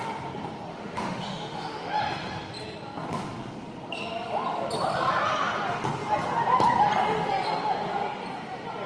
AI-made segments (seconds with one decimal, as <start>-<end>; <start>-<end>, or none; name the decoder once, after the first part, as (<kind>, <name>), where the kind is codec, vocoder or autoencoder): 0.7-1.9 (autoencoder, DAC-VAE)